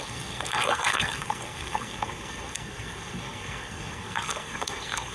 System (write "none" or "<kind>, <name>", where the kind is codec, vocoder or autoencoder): codec, SNAC